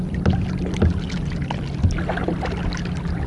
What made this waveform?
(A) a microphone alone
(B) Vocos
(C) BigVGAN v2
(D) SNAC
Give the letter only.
A